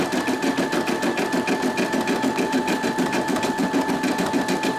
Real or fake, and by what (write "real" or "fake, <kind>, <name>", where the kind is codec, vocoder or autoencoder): real